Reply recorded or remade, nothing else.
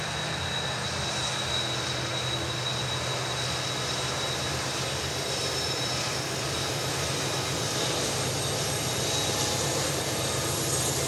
recorded